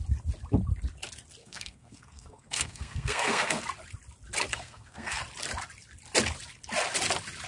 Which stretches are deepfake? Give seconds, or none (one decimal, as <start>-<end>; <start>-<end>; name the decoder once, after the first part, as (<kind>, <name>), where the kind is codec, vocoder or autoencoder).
1.4-3.6 (codec, SNAC); 4.5-5.2